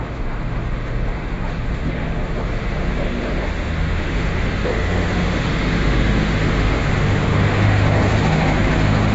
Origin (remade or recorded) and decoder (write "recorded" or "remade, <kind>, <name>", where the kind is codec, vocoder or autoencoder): remade, autoencoder, DAC-VAE